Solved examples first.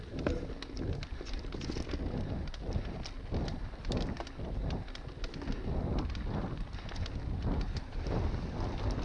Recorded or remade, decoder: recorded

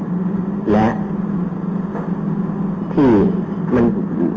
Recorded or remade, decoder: recorded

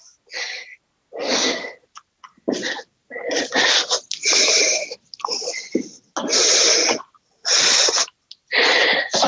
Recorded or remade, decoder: recorded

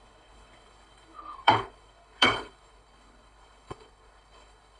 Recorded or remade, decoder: remade, codec, HILCodec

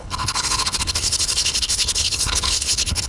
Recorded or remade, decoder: remade, codec, HILCodec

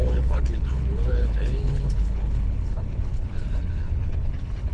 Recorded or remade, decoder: remade, codec, HILCodec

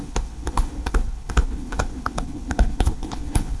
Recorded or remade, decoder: remade, codec, HILCodec